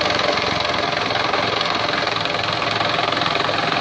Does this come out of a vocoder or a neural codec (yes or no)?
no